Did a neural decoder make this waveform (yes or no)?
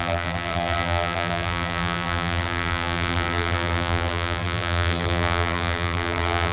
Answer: yes